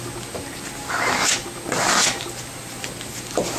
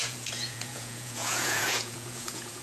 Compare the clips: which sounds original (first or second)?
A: first